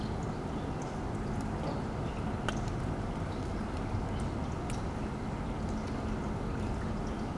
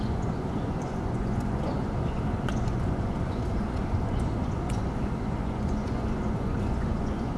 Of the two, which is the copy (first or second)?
second